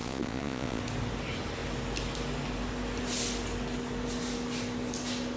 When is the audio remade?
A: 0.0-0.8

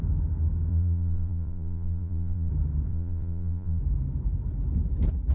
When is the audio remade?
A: 0.7-2.5; 2.9-3.8

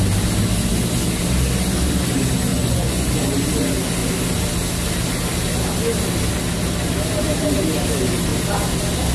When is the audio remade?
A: 2.5-3.1

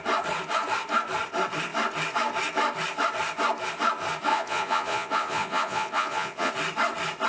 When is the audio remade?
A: 4.3-6.5